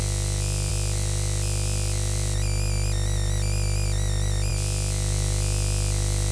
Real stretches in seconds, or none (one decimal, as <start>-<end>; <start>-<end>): 0.0-6.3